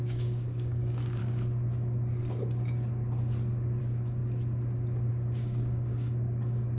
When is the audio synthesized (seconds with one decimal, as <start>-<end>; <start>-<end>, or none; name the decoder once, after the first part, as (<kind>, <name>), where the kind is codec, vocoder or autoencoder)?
0.0-1.2 (codec, DAC); 3.8-4.2; 5.1-6.8